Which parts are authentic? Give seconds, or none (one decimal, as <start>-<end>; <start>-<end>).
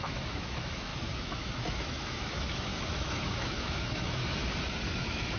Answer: 4.2-5.0